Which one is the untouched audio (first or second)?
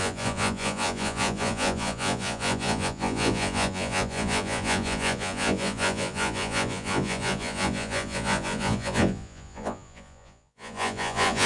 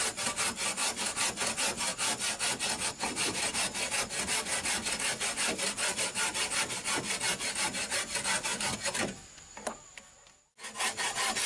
second